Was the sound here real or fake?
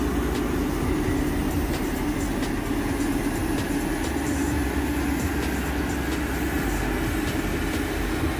real